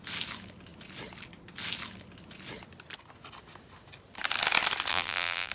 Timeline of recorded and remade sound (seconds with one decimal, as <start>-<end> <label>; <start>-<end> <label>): 0.0-4.9 recorded; 4.9-5.5 remade